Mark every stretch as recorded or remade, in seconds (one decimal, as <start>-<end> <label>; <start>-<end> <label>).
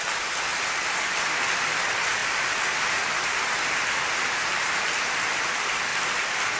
0.0-5.9 recorded; 5.9-6.6 remade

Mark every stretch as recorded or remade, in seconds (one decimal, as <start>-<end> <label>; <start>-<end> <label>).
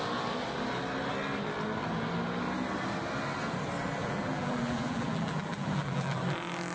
0.0-4.0 recorded; 4.0-6.2 remade; 6.2-6.7 recorded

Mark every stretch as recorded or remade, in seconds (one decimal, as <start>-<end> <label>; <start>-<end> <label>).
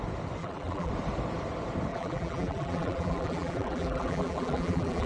0.0-0.4 recorded; 0.4-0.9 remade; 0.9-1.9 recorded; 1.9-5.1 remade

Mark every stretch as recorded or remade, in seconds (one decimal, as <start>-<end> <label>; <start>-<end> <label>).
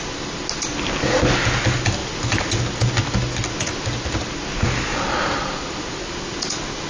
0.0-2.0 recorded; 2.0-2.6 remade; 2.6-6.9 recorded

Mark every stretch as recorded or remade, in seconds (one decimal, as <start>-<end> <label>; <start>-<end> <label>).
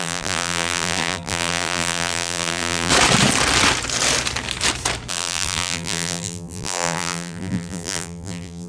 0.0-2.9 remade; 2.9-5.1 recorded; 5.1-8.7 remade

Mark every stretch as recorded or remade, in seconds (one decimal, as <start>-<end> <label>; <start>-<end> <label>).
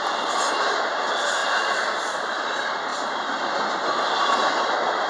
0.0-1.4 recorded; 1.4-2.3 remade; 2.3-2.9 recorded; 2.9-3.5 remade; 3.5-5.1 recorded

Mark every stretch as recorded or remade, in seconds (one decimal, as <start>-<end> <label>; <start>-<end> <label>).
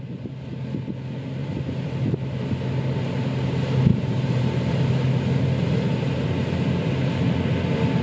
0.0-1.4 recorded; 1.4-2.4 remade; 2.4-3.9 recorded; 3.9-4.7 remade; 4.7-8.0 recorded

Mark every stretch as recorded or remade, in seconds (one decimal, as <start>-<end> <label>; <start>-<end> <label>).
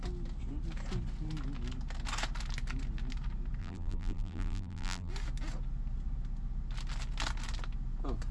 0.0-3.6 recorded; 3.6-5.1 remade; 5.1-8.3 recorded